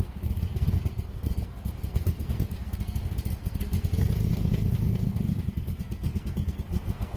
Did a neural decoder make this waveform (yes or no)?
yes